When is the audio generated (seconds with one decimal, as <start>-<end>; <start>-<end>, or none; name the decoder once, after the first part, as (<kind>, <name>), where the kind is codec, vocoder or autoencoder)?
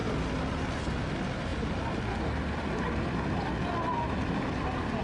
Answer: none